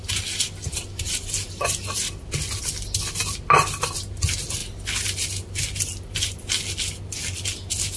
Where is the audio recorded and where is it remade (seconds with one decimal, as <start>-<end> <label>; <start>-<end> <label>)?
0.0-8.0 recorded